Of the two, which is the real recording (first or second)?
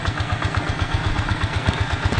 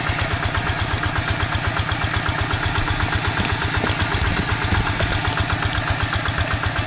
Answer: second